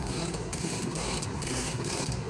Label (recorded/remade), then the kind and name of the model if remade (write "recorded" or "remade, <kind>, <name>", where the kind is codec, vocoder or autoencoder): remade, codec, SNAC